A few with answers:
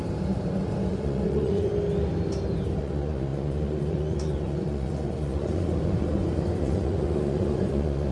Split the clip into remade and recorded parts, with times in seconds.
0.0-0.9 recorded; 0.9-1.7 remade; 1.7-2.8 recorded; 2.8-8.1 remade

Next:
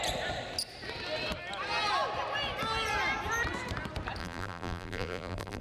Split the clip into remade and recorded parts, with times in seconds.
0.0-4.2 recorded; 4.2-5.6 remade